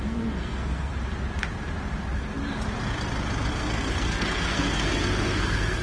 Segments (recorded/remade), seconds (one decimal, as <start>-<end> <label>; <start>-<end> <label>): 0.0-0.9 remade; 0.9-3.5 recorded; 3.5-5.8 remade